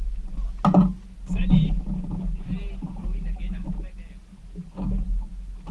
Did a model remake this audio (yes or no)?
no